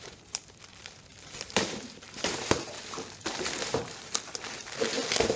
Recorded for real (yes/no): no